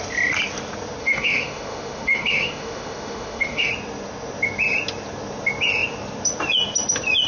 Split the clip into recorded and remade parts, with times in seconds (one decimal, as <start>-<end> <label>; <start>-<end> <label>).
0.0-1.0 recorded; 1.0-3.7 remade; 3.7-7.3 recorded